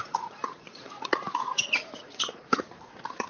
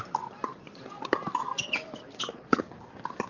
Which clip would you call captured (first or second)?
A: second